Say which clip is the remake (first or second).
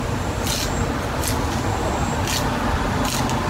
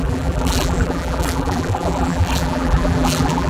second